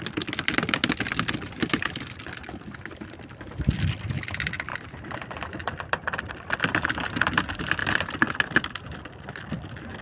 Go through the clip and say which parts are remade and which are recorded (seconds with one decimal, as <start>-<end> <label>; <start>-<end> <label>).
0.0-7.8 recorded; 7.8-9.4 remade; 9.4-10.0 recorded